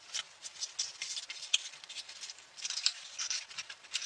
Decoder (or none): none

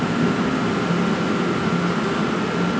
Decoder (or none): none